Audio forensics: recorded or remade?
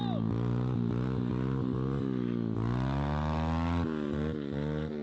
recorded